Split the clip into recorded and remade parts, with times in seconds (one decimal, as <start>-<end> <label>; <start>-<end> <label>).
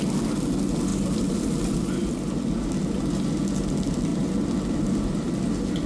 0.0-0.9 recorded; 0.9-2.1 remade; 2.1-4.1 recorded; 4.1-4.8 remade; 4.8-5.9 recorded